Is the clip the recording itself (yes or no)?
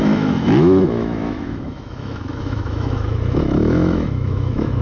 no